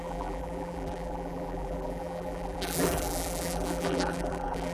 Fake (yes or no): yes